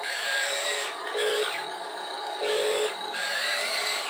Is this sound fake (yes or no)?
yes